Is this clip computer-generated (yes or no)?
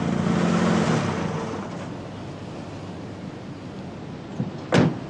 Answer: no